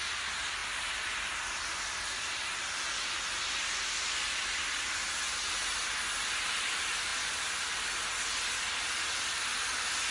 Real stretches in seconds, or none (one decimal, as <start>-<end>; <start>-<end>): 0.0-10.1